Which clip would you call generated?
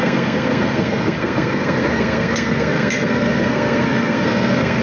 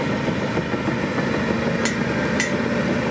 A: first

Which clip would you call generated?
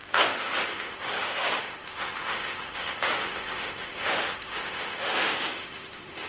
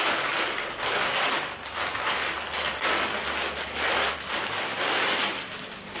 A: first